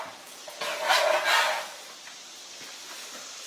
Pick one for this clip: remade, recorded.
recorded